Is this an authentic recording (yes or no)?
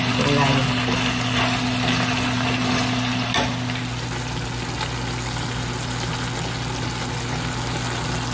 yes